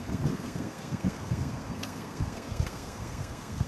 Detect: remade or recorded remade